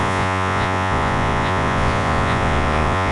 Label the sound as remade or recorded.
remade